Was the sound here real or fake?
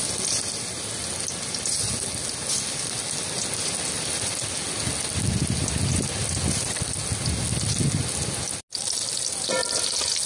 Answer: real